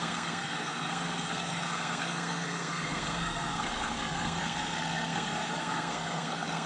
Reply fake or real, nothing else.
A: fake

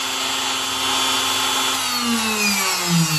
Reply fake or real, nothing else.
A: real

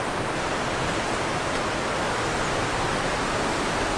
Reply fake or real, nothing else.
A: real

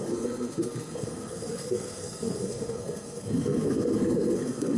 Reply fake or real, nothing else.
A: fake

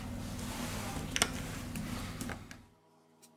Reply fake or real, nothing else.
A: real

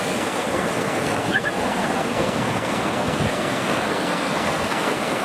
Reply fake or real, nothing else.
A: fake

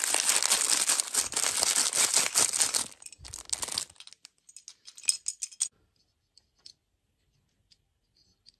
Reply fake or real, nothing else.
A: real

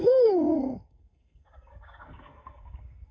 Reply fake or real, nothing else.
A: fake